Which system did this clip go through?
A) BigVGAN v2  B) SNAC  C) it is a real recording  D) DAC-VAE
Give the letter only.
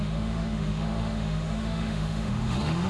D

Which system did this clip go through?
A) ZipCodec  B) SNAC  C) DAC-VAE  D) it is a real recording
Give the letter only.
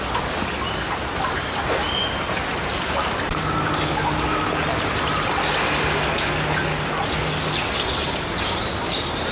D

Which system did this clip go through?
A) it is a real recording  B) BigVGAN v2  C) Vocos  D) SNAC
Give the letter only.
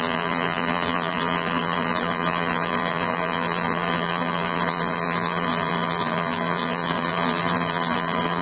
B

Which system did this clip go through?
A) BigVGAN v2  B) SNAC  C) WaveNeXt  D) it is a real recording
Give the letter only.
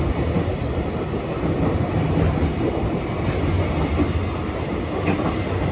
D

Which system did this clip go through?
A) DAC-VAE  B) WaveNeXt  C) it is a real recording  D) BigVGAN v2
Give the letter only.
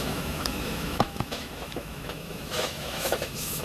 A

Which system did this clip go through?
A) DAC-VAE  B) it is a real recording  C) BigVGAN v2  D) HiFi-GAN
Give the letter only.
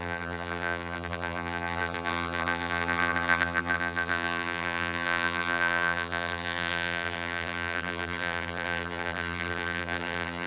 C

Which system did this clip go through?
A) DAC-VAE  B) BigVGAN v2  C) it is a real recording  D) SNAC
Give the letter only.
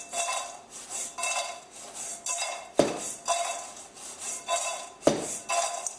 C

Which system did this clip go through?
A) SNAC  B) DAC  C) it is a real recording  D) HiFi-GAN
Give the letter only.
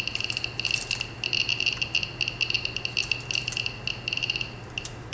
C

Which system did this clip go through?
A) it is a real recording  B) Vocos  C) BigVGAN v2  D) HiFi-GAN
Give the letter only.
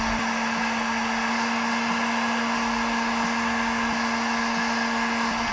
A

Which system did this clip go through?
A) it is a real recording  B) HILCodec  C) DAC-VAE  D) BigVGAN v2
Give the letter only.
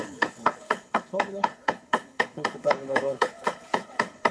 B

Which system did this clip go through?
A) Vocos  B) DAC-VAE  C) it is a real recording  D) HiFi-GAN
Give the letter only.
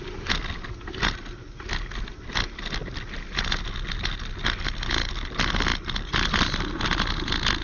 C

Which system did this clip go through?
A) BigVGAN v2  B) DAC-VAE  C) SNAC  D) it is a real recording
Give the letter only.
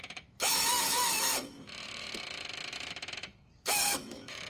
B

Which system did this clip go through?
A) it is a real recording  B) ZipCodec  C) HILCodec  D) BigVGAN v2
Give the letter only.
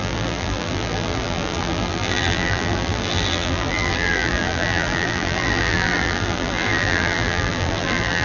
D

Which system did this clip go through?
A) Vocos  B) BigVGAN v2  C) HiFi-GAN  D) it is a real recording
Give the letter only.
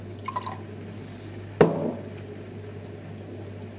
D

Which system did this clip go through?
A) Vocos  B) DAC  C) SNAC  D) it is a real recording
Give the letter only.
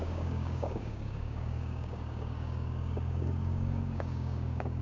B